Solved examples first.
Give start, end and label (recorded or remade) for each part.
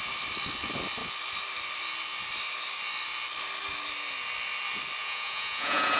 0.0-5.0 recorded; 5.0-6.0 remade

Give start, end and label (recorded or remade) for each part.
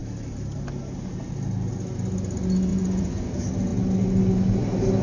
0.0-2.7 recorded; 2.7-3.3 remade; 3.3-5.0 recorded